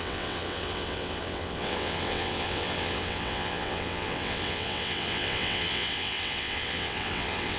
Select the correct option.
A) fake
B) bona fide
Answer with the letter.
A